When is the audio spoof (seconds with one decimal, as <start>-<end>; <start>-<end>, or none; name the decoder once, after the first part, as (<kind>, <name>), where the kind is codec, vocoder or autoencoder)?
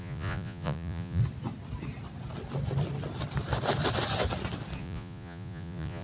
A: 0.0-1.2 (vocoder, Vocos); 4.8-6.0